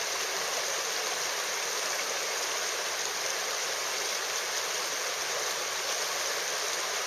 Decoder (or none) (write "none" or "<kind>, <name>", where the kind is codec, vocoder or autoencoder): none